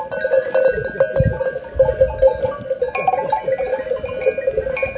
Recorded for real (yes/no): yes